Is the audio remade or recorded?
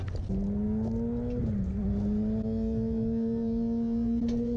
recorded